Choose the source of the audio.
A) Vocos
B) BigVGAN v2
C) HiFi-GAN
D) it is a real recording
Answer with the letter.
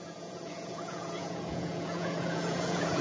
A